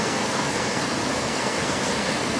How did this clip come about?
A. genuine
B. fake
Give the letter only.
B